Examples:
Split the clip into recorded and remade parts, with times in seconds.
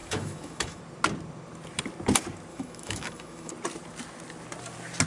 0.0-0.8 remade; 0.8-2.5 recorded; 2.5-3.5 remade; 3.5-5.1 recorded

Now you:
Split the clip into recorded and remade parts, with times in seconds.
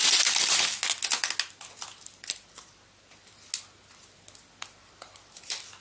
0.0-5.8 recorded